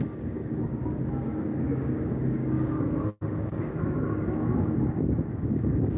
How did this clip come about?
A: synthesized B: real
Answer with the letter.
A